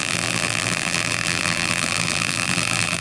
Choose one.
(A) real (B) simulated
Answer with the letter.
B